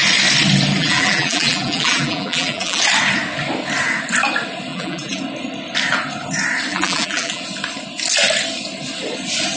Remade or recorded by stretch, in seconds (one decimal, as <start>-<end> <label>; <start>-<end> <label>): 0.0-0.8 recorded; 0.8-2.8 remade; 2.8-4.7 recorded; 4.7-5.2 remade; 5.2-6.7 recorded; 6.7-7.4 remade; 7.4-9.6 recorded